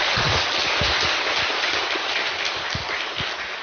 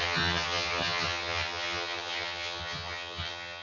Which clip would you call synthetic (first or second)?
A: second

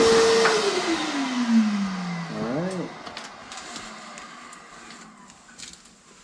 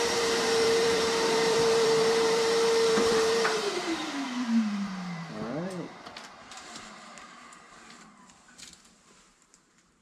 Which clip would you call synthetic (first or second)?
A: second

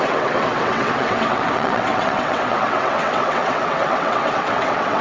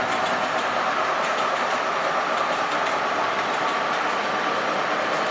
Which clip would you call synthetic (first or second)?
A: first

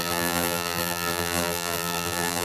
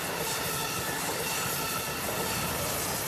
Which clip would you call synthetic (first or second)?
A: first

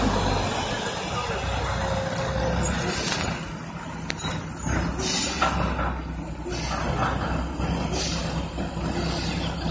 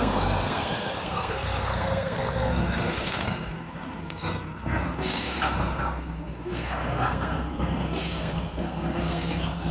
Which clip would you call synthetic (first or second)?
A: second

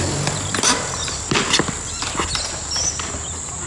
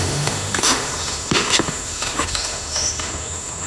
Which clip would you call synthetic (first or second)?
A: second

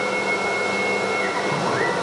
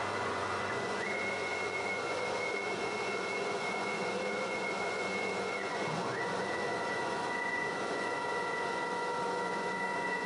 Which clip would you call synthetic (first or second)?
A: second